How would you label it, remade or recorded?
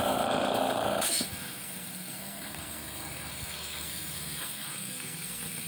remade